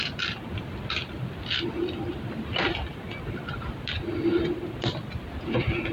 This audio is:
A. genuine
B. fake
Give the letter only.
B